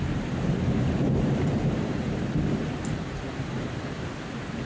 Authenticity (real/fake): fake